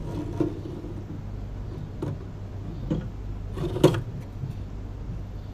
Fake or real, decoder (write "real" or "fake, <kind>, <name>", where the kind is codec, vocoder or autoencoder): real